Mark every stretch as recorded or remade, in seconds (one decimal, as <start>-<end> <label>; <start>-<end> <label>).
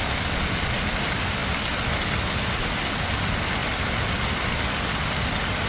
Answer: 0.0-5.7 recorded